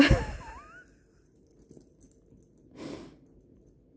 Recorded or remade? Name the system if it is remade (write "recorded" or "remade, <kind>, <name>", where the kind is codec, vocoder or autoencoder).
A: recorded